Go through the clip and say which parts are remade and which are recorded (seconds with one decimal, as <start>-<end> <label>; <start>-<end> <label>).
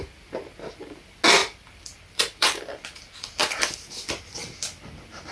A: 0.0-1.4 recorded; 1.4-3.6 remade; 3.6-5.3 recorded